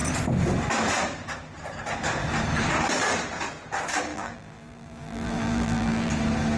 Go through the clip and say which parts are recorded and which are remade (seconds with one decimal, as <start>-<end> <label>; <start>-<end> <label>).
0.0-4.1 recorded; 4.1-6.1 remade; 6.1-6.6 recorded